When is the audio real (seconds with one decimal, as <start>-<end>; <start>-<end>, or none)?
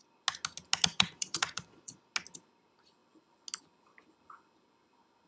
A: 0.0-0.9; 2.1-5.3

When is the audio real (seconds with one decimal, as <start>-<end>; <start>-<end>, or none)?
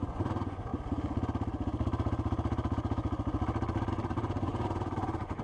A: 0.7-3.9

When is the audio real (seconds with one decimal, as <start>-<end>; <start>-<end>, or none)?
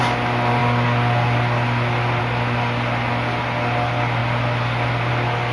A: 0.0-5.5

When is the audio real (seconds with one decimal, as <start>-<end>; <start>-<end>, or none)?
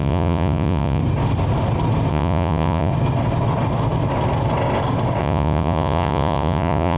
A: 1.0-2.1; 2.9-5.2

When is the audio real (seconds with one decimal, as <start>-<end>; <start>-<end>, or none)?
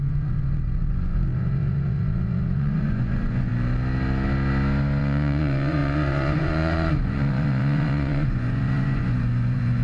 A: 3.5-5.0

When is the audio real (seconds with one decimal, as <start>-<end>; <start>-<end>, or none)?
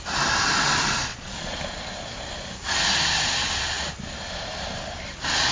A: 0.0-1.1; 1.6-5.5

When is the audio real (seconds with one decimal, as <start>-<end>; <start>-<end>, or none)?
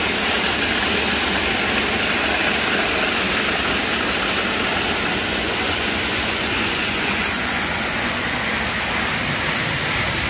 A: 0.0-5.2; 8.5-10.3